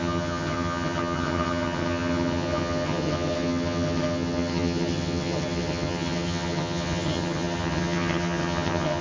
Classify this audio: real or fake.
fake